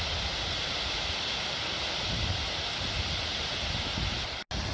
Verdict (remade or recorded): recorded